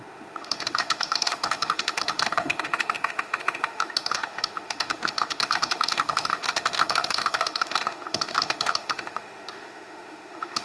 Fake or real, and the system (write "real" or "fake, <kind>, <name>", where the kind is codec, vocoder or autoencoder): fake, autoencoder, DAC-VAE